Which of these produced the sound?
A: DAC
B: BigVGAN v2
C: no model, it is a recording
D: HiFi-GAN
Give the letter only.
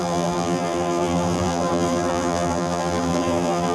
B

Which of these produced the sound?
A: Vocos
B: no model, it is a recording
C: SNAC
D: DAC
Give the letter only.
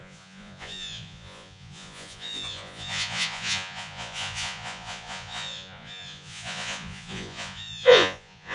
A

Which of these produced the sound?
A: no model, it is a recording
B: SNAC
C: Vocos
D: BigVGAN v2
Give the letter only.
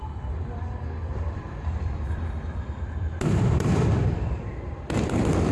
D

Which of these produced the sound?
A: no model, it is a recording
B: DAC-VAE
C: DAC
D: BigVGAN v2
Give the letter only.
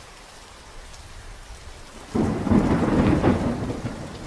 D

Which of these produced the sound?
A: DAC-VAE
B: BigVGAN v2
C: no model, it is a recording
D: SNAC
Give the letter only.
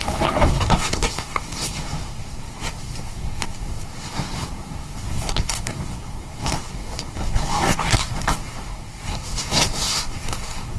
D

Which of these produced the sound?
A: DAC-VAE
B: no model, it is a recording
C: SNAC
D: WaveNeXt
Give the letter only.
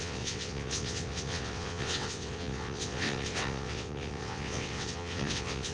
D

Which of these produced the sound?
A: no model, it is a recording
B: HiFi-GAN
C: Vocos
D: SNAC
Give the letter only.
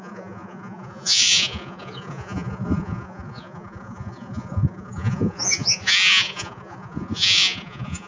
C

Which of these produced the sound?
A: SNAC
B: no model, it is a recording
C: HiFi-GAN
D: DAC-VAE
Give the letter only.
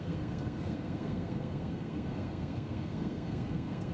A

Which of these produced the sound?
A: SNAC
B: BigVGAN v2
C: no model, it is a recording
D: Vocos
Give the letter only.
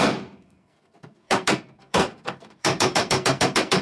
A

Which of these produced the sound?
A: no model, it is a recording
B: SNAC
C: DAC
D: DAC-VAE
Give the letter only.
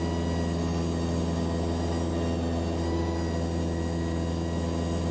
A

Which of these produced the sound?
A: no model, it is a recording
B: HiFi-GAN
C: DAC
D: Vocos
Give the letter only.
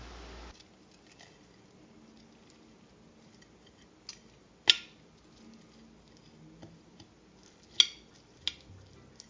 A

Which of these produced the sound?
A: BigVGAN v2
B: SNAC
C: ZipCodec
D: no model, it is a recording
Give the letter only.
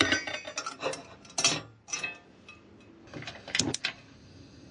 D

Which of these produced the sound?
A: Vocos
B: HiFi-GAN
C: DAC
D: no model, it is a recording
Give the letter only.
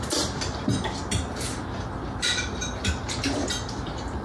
D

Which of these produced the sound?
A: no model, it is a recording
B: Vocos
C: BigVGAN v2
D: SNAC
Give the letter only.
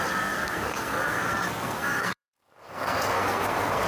D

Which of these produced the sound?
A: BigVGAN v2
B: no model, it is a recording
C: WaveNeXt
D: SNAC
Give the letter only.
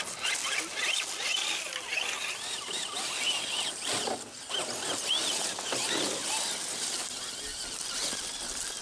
B